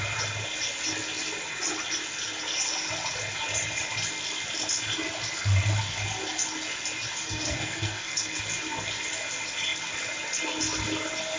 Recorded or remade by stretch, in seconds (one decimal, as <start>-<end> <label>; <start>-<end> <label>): 0.0-7.2 recorded; 7.2-8.4 remade; 8.4-11.4 recorded